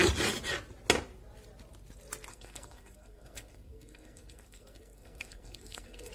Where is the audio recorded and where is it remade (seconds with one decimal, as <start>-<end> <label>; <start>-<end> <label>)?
0.0-2.3 recorded; 2.3-6.1 remade